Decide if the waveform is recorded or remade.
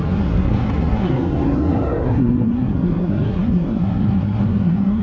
remade